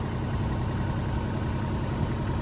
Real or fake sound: real